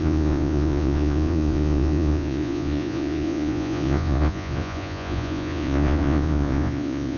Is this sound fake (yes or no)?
yes